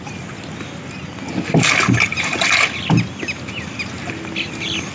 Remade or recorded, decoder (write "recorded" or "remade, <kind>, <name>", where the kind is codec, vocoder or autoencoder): recorded